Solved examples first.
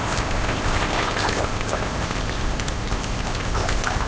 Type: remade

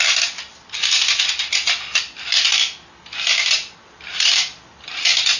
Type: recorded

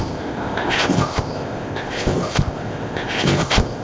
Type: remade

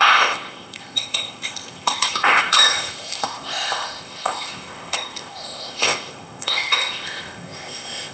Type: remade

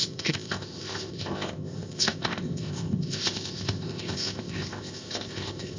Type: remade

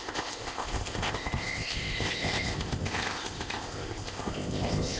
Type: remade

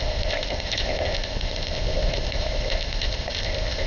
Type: remade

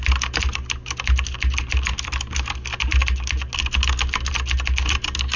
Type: recorded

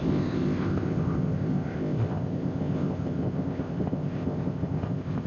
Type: remade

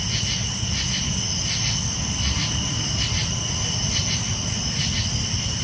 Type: recorded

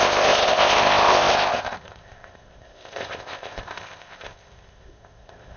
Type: remade